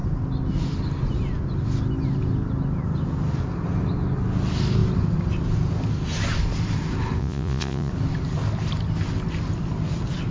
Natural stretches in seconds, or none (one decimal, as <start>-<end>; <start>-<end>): 0.0-7.2; 7.9-10.3